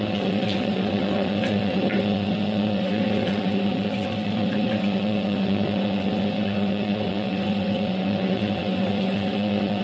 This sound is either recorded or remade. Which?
remade